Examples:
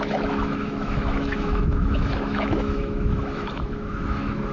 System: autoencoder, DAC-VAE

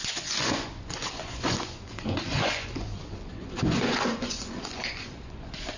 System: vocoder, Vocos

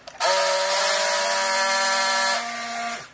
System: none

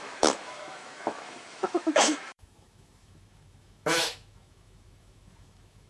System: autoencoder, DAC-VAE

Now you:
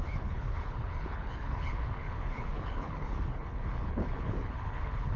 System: codec, HILCodec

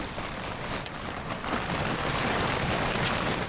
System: none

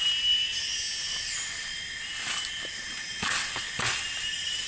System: none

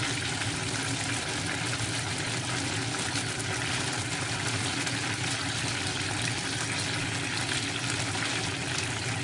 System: none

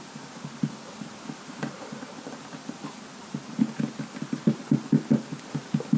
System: none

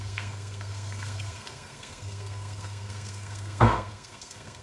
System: codec, SNAC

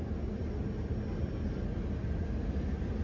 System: none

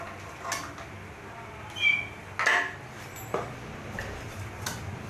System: none